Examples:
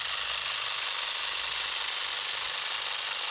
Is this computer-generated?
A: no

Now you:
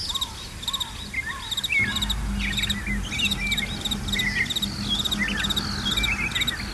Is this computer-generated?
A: no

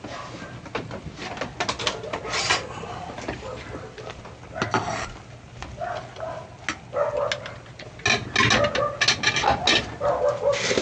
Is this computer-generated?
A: no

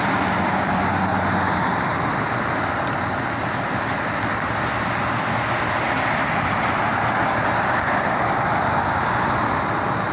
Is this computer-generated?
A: no